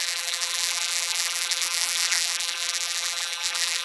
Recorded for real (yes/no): no